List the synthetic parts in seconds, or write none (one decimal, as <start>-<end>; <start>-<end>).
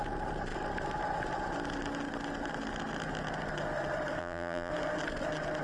4.2-4.7